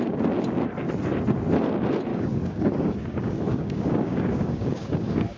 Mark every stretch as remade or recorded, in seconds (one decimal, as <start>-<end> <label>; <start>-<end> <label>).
0.0-2.1 recorded; 2.1-5.4 remade